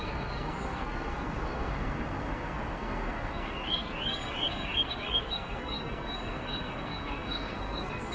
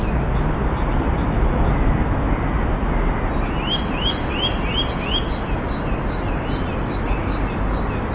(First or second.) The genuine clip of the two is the second